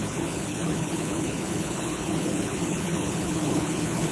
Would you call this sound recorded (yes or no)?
no